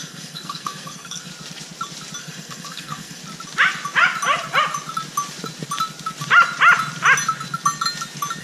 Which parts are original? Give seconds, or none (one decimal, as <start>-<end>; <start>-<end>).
1.3-2.2; 3.2-8.4